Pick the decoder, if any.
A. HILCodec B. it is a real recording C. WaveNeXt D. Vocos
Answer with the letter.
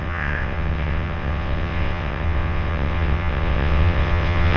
C